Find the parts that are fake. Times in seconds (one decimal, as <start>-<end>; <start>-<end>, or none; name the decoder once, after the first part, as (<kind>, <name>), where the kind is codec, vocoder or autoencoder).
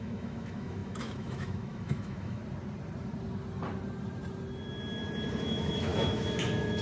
0.0-2.4 (autoencoder, DAC-VAE); 5.4-6.8